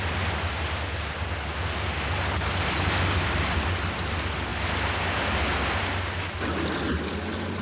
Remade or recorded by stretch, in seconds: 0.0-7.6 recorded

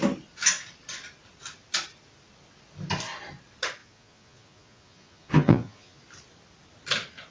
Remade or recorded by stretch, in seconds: 0.0-3.8 recorded; 3.8-6.0 remade; 6.0-7.3 recorded

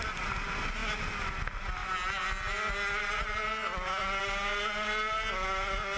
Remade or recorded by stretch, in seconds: 0.0-6.0 recorded

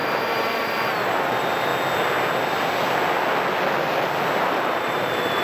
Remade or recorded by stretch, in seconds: 0.0-1.7 remade; 1.7-4.4 recorded; 4.4-5.4 remade

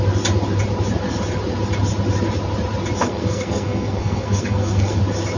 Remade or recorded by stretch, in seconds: 0.0-3.0 recorded; 3.0-5.0 remade; 5.0-5.4 recorded

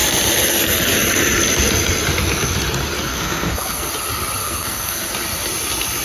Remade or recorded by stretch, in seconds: 0.0-3.1 recorded; 3.1-3.9 remade; 3.9-4.4 recorded; 4.4-5.1 remade; 5.1-6.0 recorded

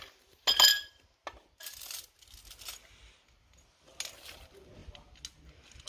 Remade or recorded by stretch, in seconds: 0.0-5.9 recorded

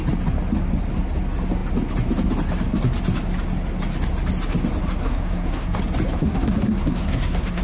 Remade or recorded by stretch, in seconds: 0.0-5.0 recorded; 5.0-5.8 remade; 5.8-6.2 recorded; 6.2-7.6 remade